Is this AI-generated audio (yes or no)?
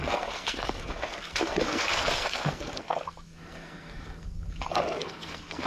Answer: yes